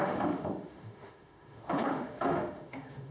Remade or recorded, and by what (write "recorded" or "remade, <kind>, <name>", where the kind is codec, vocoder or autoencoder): remade, autoencoder, DAC-VAE